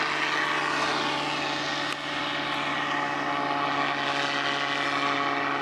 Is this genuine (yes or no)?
yes